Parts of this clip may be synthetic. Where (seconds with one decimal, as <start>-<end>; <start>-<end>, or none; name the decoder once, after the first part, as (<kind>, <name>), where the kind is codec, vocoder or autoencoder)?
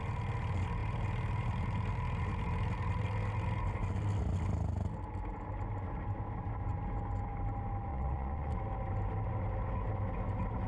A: 7.9-8.5 (vocoder, Vocos)